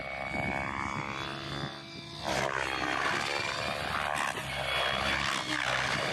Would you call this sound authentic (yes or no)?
yes